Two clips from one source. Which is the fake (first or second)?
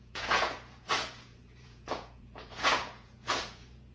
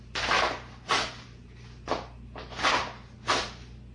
first